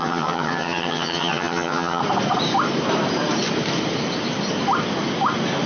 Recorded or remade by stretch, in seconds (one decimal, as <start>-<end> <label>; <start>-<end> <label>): 0.0-2.0 remade; 2.0-5.7 recorded